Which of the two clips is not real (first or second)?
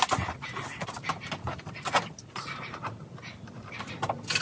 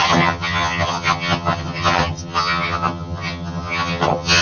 second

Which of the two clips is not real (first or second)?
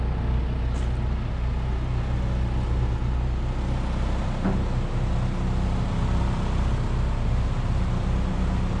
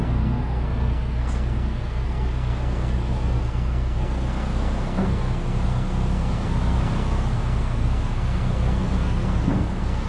second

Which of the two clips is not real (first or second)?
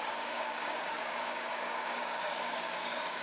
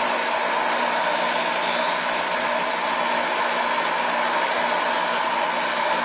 first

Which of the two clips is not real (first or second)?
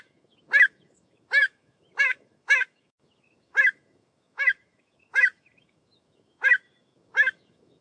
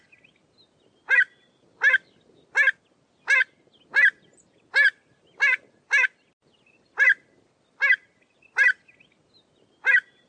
first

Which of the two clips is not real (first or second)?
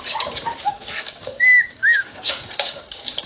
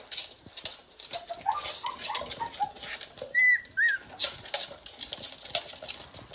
first